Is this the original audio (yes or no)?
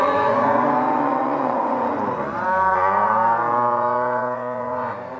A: no